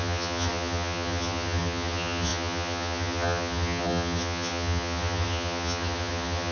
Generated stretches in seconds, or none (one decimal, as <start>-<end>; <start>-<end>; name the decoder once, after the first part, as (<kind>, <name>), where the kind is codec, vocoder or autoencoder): 0.0-6.5 (vocoder, HiFi-GAN)